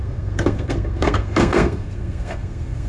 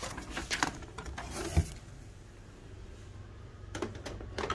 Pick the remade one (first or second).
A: first